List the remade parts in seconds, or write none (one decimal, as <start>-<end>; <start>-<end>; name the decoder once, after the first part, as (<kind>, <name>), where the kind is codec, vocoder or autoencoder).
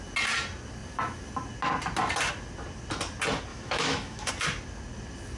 3.5-4.3 (autoencoder, DAC-VAE)